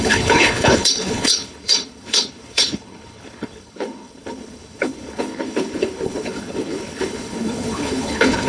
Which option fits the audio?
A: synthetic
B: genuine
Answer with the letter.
A